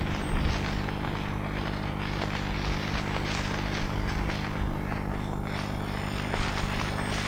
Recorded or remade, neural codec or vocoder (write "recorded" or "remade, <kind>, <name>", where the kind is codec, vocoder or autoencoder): recorded